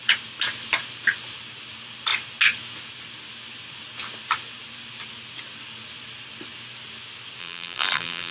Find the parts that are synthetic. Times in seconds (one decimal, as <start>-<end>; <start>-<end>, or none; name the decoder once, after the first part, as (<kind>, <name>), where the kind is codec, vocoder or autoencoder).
7.4-8.3 (vocoder, BigVGAN v2)